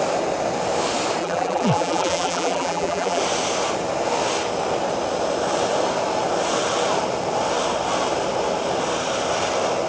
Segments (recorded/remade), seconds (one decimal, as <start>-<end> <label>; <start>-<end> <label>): 0.0-1.2 recorded; 1.2-3.2 remade; 3.2-9.9 recorded